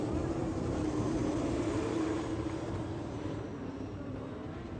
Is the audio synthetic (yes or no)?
yes